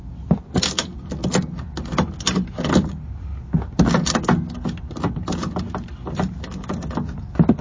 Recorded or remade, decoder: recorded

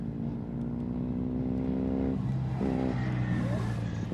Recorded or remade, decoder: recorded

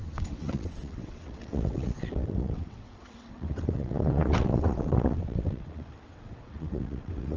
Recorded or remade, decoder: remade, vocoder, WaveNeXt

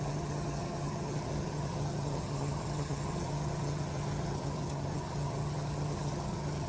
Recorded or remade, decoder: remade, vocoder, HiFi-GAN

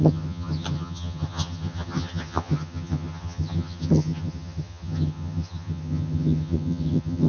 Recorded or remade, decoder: remade, vocoder, HiFi-GAN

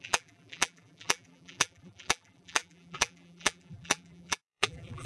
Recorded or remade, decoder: remade, vocoder, BigVGAN v2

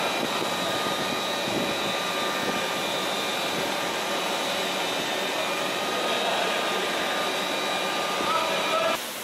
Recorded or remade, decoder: recorded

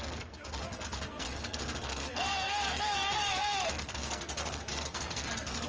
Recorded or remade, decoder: remade, codec, SNAC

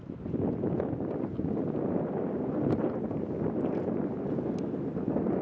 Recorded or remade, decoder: recorded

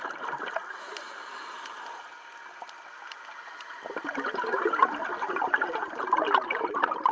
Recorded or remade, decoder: recorded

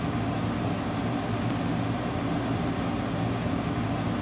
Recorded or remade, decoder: recorded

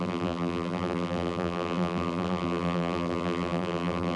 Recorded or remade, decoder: remade, vocoder, BigVGAN v2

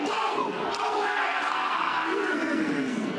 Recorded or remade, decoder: remade, codec, SNAC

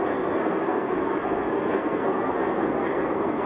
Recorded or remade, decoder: remade, codec, SNAC